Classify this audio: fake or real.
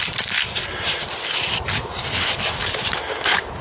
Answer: fake